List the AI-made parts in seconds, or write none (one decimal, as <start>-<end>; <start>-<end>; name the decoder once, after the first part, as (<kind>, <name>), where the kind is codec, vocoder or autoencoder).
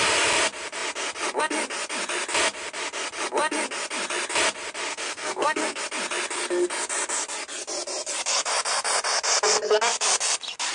4.9-5.8 (codec, SNAC)